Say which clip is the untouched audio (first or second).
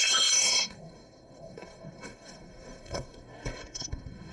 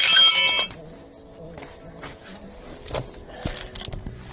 second